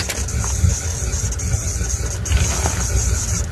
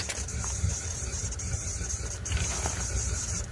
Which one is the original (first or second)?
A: first